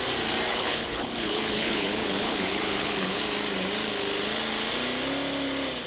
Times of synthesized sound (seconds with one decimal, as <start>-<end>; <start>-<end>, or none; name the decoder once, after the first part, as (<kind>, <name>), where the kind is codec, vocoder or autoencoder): 0.5-3.2 (codec, HILCodec)